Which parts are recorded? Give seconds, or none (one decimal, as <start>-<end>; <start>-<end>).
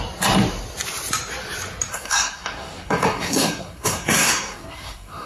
0.0-1.9